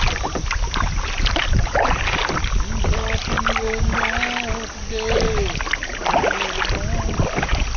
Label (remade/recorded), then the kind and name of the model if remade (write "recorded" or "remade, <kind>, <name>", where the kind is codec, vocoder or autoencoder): recorded